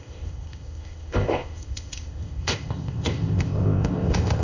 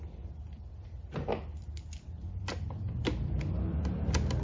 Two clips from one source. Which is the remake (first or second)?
first